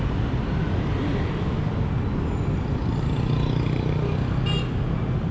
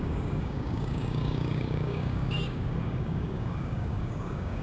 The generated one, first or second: second